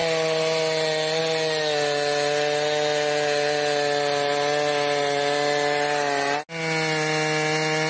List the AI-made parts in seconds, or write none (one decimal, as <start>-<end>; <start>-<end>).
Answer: none

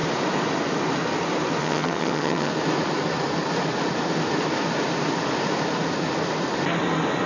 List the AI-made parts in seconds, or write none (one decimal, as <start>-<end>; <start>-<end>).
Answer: 1.6-2.5

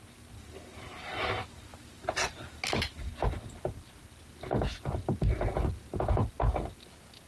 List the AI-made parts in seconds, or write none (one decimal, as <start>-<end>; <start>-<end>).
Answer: none

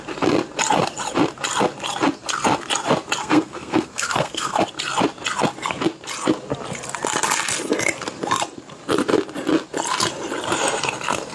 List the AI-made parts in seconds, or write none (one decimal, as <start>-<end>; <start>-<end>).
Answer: 3.2-4.6

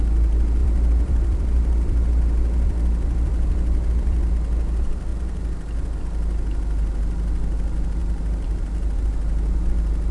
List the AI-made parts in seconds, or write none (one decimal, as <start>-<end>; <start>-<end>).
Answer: 0.6-4.3; 8.0-9.0